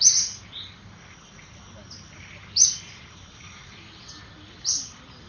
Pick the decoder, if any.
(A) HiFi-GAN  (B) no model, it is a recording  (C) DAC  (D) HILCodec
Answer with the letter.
B